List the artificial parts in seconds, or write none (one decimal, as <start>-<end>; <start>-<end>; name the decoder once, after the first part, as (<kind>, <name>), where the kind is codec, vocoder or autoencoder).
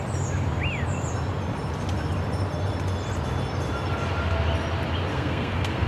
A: 5.1-5.9 (codec, SNAC)